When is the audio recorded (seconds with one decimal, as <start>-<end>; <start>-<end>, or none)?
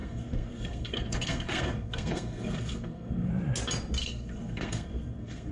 3.3-4.0